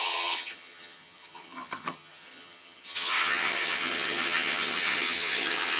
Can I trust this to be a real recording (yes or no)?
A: no